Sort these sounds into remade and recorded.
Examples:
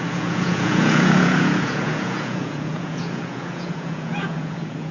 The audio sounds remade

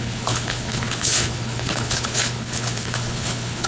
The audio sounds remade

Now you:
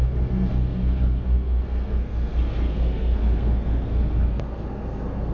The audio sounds remade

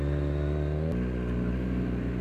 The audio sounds recorded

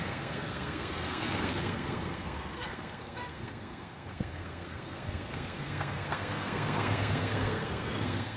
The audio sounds remade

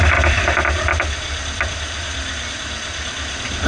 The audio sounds recorded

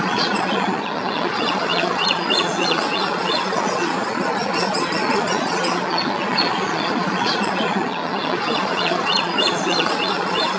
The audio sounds remade